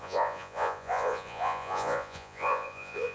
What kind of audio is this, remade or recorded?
remade